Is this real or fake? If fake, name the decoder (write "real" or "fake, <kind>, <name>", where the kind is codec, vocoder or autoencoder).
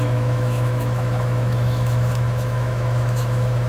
fake, autoencoder, DAC-VAE